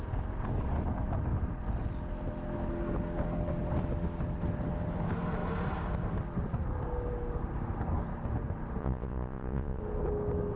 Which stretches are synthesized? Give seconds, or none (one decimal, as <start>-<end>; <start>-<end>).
8.8-9.8